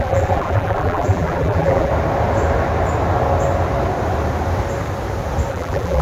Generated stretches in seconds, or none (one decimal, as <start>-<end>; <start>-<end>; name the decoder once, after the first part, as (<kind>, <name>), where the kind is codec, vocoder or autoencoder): 0.0-1.9 (vocoder, BigVGAN v2); 5.5-6.0